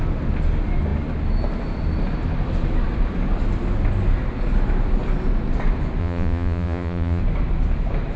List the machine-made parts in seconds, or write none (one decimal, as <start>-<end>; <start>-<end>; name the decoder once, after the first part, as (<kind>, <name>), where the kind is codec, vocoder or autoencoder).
6.0-7.2 (vocoder, Vocos)